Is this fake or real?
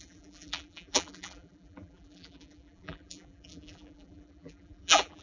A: fake